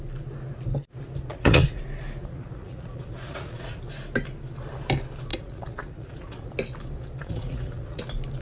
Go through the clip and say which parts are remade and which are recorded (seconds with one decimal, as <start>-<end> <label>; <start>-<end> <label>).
0.0-1.3 recorded; 1.3-1.8 remade; 1.8-2.2 recorded; 2.2-3.8 remade; 3.8-5.3 recorded; 5.3-6.5 remade; 6.5-7.2 recorded; 7.2-8.0 remade; 8.0-8.4 recorded

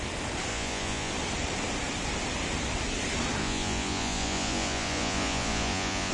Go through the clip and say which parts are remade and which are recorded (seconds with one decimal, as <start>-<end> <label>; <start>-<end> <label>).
0.0-0.5 recorded; 0.5-1.1 remade; 1.1-3.4 recorded; 3.4-6.1 remade

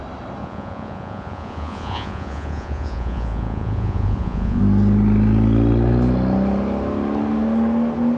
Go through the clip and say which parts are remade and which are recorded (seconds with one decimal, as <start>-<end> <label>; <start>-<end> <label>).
0.0-0.4 recorded; 0.4-4.6 remade; 4.6-8.2 recorded

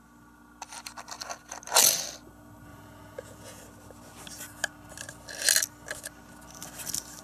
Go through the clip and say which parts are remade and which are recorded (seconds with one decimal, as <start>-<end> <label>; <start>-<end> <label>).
0.0-2.7 recorded; 2.7-3.6 remade; 3.6-7.2 recorded